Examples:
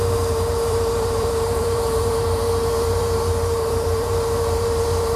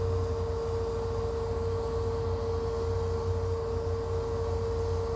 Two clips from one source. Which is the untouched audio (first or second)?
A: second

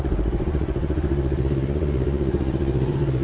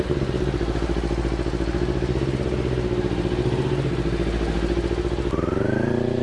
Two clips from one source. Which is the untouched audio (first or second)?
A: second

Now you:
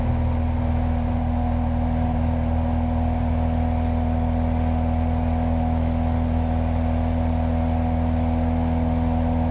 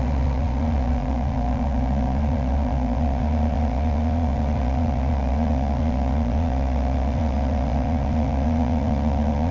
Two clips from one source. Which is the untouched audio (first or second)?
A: first